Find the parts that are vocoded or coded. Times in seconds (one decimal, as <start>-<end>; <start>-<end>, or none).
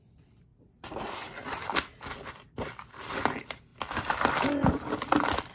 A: none